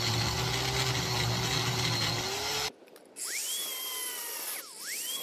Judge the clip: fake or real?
real